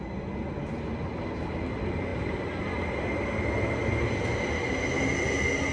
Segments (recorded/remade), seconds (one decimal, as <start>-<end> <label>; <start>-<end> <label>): 0.0-5.7 recorded